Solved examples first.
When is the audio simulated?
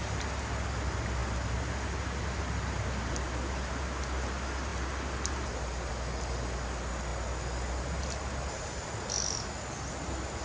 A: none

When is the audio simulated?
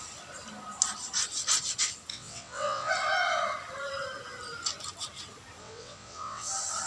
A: 2.1-2.9; 5.6-6.5